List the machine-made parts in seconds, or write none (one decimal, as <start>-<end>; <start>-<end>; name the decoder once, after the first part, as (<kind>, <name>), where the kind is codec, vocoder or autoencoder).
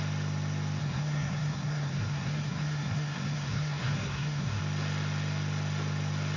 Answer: 0.8-4.6 (codec, SNAC)